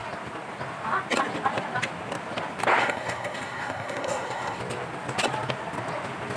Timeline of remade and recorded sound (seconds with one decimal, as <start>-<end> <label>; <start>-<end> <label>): 0.0-2.8 recorded; 2.8-4.6 remade; 4.6-6.4 recorded